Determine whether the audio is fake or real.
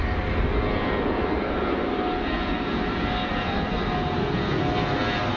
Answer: real